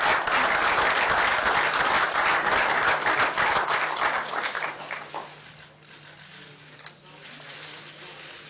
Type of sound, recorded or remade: recorded